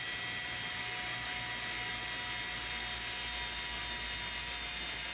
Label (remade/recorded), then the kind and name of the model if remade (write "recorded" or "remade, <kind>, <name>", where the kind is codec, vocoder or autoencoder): recorded